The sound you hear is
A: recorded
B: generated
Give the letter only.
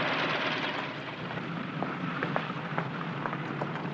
A